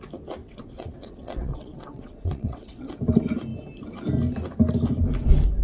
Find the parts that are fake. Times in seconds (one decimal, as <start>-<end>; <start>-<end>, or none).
0.4-3.0